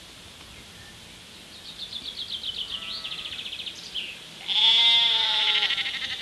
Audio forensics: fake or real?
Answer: real